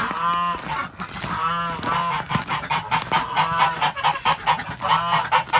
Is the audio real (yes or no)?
yes